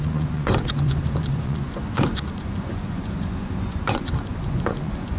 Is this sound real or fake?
fake